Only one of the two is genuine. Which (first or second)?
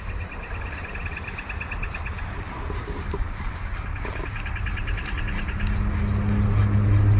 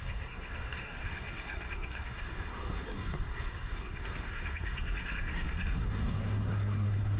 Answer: first